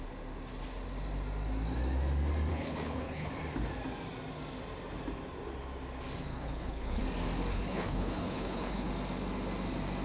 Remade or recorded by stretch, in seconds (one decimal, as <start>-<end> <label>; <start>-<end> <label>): 0.0-2.5 recorded; 2.5-3.3 remade; 3.3-6.3 recorded; 6.3-7.0 remade; 7.0-7.5 recorded; 7.5-8.9 remade; 8.9-10.0 recorded